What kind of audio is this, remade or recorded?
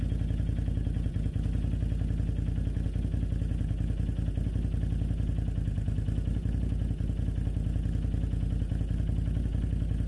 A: recorded